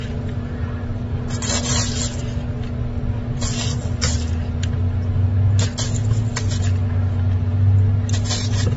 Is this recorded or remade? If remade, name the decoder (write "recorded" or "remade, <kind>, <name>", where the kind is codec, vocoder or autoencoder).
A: recorded